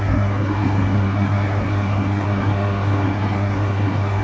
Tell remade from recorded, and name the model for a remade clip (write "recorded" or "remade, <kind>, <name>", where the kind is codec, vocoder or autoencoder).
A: remade, codec, SNAC